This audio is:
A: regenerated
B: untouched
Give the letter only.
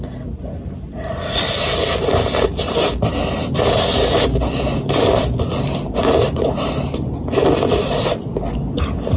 B